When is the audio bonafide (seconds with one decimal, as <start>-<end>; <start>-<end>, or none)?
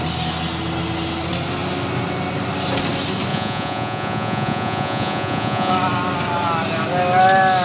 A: 0.0-3.3; 5.7-7.6